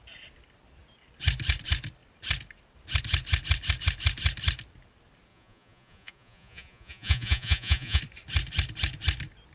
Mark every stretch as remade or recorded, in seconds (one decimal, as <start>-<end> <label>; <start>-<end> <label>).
0.0-5.3 recorded; 5.3-8.0 remade; 8.0-9.5 recorded